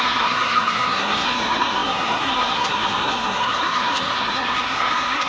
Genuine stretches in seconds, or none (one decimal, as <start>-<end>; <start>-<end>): none